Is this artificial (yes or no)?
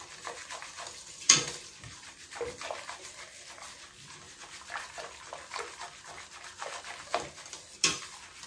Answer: no